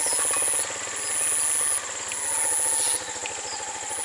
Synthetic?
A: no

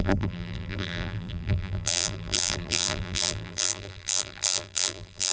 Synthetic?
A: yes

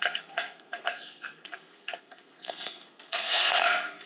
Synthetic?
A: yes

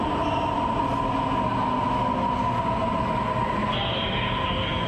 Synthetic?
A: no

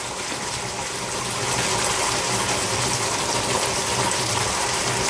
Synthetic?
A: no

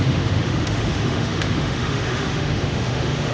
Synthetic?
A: yes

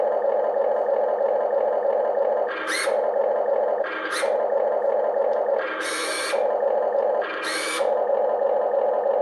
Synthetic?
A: no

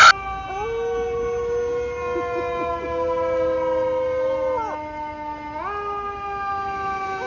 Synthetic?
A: no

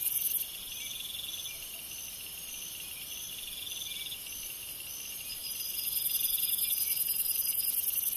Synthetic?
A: no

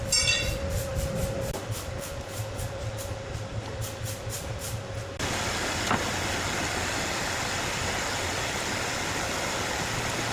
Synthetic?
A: no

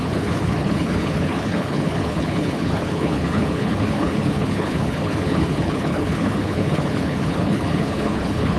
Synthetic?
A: yes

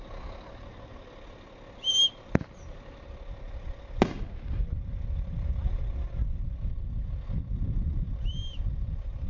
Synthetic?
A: no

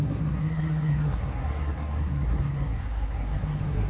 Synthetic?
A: yes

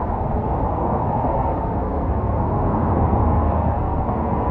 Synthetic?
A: yes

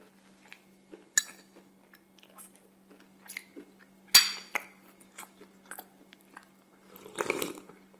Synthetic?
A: no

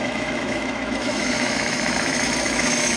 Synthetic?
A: yes